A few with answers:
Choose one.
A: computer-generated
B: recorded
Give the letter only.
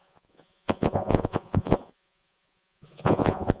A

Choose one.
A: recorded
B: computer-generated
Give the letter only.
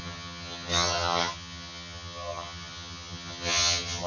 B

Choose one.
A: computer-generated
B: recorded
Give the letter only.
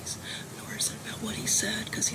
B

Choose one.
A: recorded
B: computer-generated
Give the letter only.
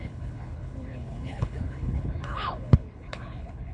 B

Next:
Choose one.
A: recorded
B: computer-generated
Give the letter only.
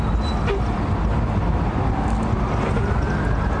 A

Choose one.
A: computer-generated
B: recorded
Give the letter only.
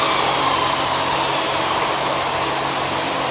B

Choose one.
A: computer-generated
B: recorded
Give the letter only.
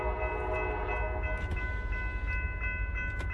B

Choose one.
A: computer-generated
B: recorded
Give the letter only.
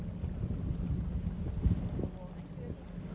B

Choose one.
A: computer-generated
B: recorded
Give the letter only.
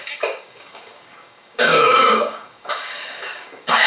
A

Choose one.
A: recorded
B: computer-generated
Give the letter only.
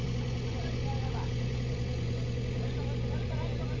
B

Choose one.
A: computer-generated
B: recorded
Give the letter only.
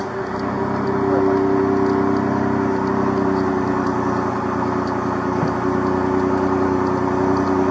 B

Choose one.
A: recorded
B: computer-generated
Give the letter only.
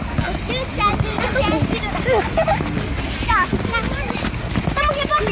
A